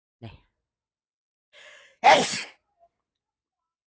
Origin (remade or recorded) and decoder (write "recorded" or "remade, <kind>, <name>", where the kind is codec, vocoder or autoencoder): recorded